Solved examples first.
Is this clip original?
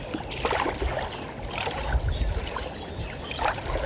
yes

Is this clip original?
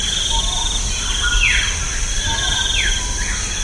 yes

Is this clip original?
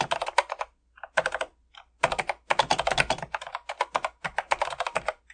yes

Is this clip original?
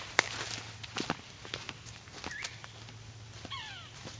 yes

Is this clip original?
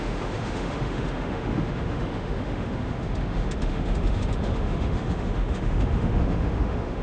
no